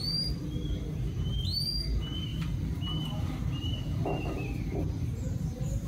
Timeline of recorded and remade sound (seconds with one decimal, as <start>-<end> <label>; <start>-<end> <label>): 0.0-2.3 recorded; 2.3-5.9 remade